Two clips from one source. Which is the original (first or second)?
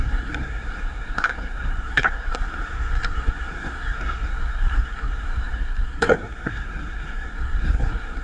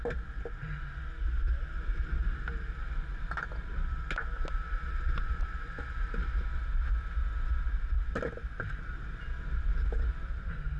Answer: second